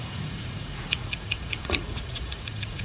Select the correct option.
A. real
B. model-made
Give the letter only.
B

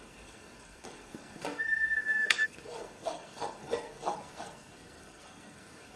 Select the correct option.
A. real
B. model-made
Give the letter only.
B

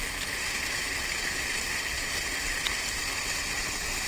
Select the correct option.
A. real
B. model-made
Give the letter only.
A